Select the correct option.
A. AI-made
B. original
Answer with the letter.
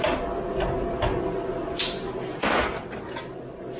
B